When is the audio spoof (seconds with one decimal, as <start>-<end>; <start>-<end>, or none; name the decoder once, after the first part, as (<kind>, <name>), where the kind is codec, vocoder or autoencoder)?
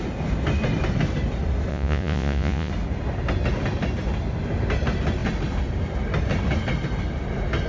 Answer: 1.7-2.7 (vocoder, Vocos)